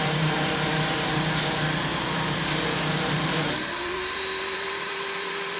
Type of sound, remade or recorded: remade